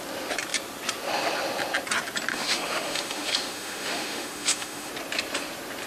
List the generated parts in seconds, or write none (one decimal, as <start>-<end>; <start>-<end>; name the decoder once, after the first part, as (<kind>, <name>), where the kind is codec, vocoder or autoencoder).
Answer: 2.3-4.9 (autoencoder, DAC-VAE)